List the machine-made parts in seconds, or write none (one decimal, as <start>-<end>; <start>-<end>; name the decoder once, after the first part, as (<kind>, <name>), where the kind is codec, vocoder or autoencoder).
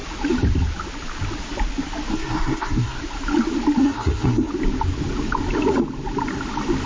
2.1-3.0 (codec, SNAC); 3.8-4.5